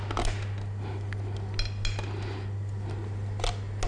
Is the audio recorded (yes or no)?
yes